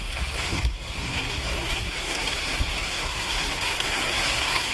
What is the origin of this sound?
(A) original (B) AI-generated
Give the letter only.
B